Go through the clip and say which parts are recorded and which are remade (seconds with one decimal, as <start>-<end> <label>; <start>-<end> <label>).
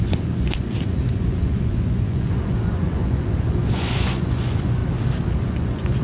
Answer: 0.0-4.8 remade; 4.8-5.4 recorded; 5.4-6.0 remade